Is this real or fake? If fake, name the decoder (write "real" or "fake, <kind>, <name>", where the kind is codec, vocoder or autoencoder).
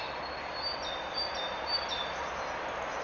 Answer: real